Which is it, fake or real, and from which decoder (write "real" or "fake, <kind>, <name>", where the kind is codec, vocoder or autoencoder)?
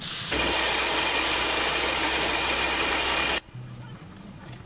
real